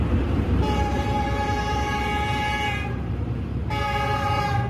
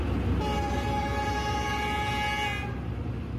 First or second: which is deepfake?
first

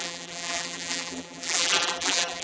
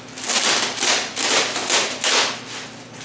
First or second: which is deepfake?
first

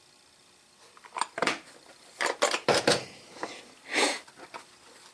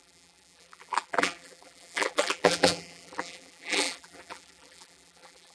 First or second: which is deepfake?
second